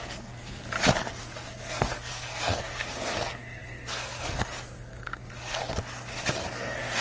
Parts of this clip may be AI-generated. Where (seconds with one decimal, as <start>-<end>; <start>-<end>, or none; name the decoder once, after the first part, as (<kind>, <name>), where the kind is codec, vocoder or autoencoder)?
0.0-0.6 (codec, SNAC); 1.2-5.6; 6.4-7.0